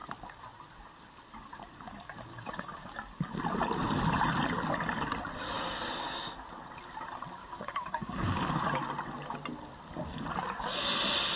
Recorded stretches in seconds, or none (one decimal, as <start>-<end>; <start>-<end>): 0.0-2.3; 3.0-7.4; 8.5-11.4

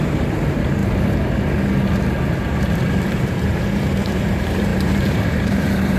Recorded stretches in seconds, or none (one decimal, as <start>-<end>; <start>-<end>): 0.8-3.1

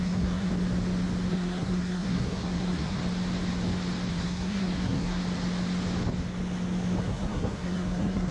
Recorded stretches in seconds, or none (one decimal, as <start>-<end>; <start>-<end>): 0.5-1.3; 3.0-4.1; 5.2-7.0

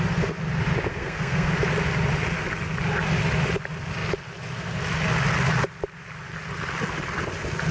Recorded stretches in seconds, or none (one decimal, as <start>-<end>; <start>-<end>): 0.0-0.9; 1.5-7.7